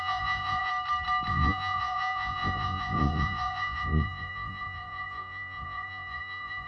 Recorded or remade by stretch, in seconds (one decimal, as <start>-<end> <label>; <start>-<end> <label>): 0.0-0.7 remade; 0.7-1.3 recorded; 1.3-6.7 remade